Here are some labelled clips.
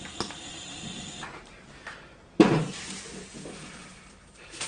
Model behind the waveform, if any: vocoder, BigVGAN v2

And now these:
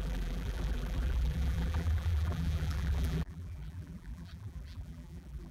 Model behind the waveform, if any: vocoder, BigVGAN v2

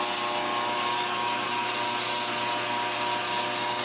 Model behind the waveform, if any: none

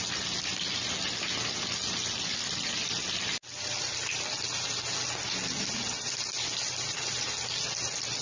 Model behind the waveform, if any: none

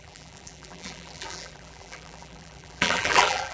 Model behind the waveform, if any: vocoder, BigVGAN v2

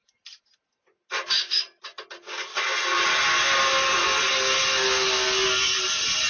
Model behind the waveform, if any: none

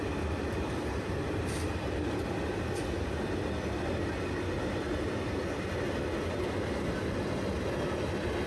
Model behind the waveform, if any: none